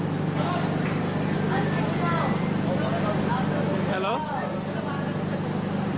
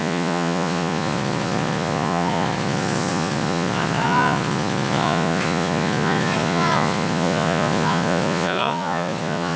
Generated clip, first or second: second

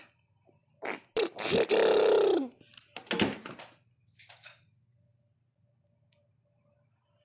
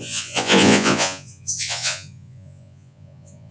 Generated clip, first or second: second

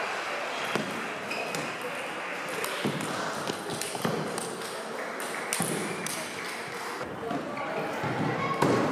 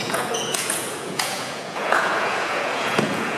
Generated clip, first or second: second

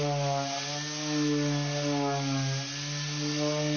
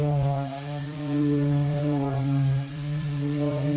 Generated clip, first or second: second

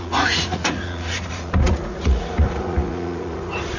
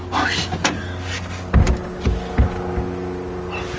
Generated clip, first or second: first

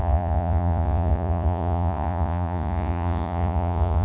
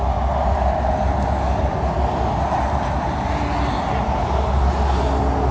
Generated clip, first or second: first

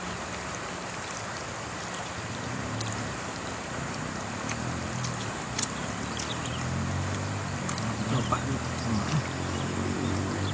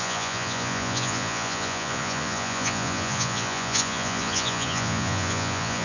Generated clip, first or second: second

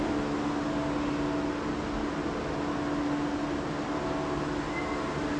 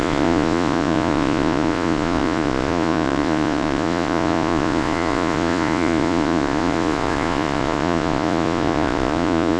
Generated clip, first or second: second